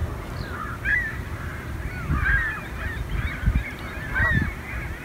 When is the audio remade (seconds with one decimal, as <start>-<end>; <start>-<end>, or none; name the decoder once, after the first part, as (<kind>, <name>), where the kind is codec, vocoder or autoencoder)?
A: 0.0-5.0 (vocoder, BigVGAN v2)

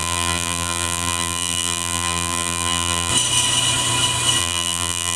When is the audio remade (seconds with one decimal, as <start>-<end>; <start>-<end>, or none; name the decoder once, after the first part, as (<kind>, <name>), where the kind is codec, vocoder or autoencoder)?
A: 0.0-3.1 (vocoder, BigVGAN v2); 4.4-5.2